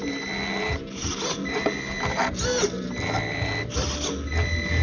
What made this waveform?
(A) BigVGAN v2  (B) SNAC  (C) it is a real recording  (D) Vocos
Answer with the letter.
C